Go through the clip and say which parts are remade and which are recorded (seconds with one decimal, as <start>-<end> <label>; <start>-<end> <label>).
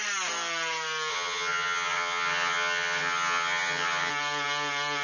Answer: 0.0-1.1 recorded; 1.1-4.1 remade; 4.1-5.0 recorded